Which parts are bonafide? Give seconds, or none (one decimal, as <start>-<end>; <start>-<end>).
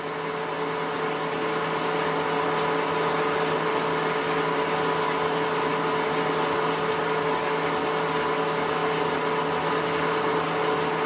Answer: 0.0-11.1